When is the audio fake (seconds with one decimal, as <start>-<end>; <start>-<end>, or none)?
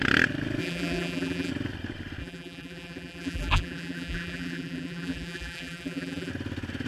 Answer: 0.6-1.5; 2.2-6.3